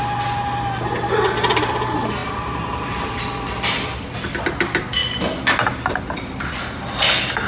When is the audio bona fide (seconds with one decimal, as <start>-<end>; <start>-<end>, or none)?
0.0-7.5